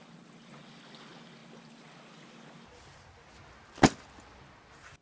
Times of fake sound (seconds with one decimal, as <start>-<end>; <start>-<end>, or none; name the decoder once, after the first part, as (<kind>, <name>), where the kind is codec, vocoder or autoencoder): none